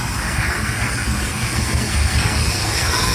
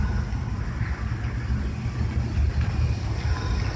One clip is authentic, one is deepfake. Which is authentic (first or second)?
second